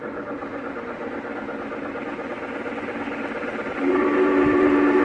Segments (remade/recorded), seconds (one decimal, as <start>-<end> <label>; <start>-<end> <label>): 0.0-0.4 remade; 0.4-2.7 recorded; 2.7-5.0 remade